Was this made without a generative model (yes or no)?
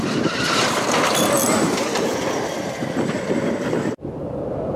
no